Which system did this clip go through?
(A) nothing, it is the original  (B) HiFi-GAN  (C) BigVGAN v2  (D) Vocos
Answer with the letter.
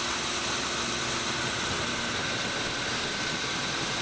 A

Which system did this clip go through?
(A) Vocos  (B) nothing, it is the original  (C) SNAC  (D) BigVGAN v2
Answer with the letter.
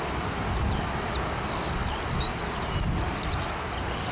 B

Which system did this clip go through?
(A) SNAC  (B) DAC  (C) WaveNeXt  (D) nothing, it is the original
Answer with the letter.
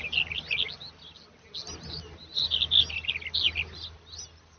D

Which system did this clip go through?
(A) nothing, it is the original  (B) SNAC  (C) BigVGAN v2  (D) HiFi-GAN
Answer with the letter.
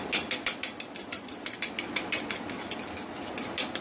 A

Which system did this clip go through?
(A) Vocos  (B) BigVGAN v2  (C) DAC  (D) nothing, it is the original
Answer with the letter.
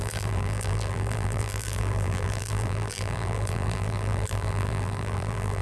B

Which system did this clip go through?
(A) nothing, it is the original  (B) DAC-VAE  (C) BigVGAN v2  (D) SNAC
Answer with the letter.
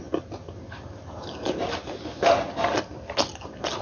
A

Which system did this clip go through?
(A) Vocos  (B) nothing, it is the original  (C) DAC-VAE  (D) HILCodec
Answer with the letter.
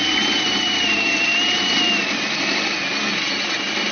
B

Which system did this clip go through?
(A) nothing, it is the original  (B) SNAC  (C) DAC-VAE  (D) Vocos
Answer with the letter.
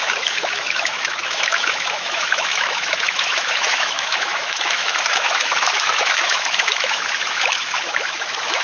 C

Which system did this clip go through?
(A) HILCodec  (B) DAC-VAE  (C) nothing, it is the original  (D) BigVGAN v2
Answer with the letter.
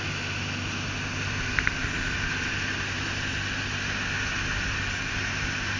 C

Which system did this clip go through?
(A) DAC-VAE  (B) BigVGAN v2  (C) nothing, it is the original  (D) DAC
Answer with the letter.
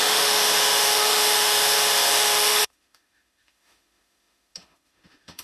A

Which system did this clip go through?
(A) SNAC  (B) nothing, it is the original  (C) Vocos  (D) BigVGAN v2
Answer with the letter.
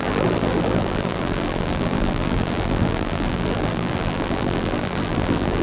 D